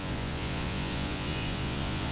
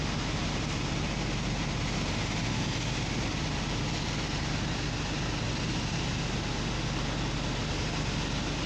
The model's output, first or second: first